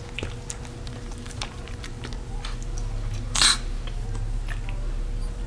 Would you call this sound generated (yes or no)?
no